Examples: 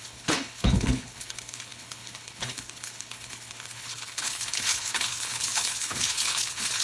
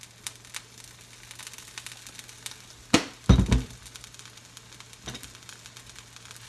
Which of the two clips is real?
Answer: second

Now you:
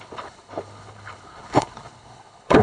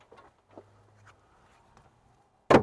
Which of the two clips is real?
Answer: second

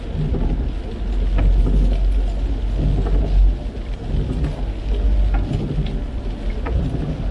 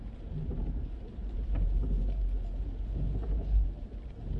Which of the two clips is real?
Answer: first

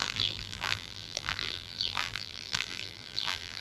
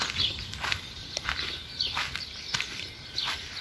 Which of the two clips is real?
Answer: second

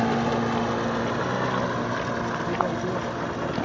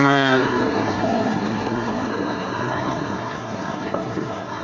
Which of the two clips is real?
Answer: first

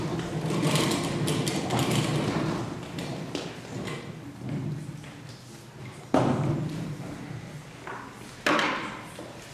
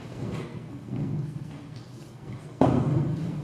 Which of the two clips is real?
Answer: first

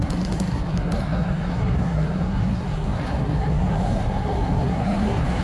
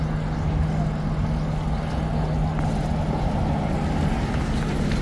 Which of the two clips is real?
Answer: second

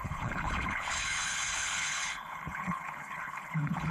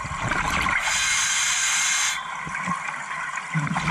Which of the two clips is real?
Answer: second